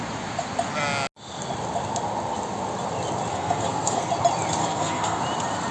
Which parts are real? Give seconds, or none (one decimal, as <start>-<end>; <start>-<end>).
0.0-3.3; 4.1-4.6; 5.2-5.7